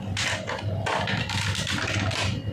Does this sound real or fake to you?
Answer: real